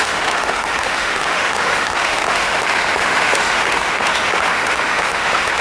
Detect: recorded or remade remade